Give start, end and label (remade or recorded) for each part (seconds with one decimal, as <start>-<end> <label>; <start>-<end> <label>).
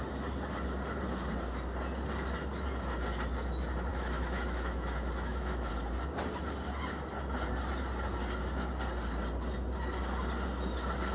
0.0-3.9 recorded; 3.9-5.7 remade; 5.7-11.1 recorded